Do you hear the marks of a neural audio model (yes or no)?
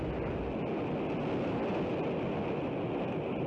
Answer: no